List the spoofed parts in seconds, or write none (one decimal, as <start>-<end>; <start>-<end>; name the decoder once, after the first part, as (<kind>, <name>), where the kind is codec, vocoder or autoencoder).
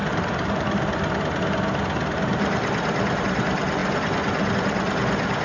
0.0-3.2 (vocoder, BigVGAN v2); 3.8-4.5